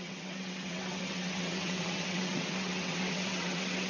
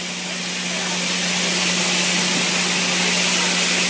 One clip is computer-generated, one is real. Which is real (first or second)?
second